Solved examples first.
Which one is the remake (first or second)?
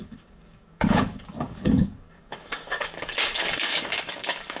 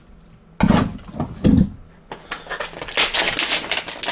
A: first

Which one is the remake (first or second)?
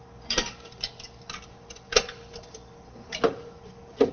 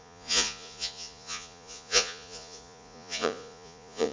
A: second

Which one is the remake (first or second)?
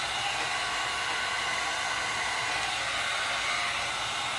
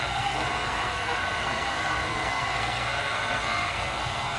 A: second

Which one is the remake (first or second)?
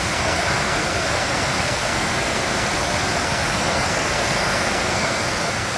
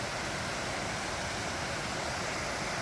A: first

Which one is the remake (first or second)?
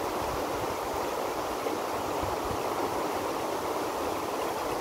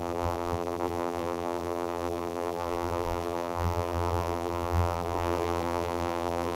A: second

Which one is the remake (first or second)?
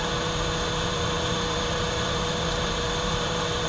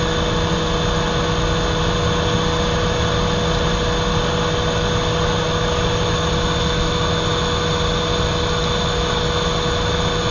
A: first